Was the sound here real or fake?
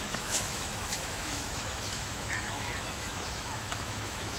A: fake